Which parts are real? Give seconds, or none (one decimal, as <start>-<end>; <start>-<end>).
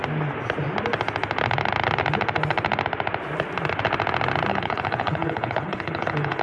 0.0-4.5